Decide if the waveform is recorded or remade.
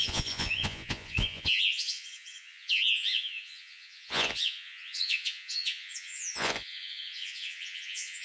remade